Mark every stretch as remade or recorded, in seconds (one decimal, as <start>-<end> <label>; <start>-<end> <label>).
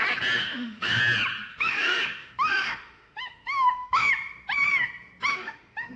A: 0.0-0.4 recorded; 0.4-1.0 remade; 1.0-1.5 recorded; 1.5-4.1 remade; 4.1-5.3 recorded; 5.3-6.0 remade